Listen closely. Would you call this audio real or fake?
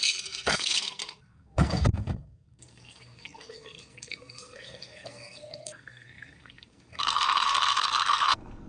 fake